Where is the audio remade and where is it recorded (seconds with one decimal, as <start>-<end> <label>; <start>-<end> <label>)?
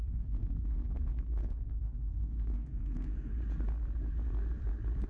0.0-3.3 remade; 3.3-5.1 recorded